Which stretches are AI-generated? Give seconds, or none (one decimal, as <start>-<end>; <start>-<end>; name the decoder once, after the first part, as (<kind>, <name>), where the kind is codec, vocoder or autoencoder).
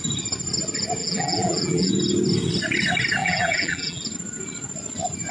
1.0-1.9 (vocoder, BigVGAN v2); 3.2-4.0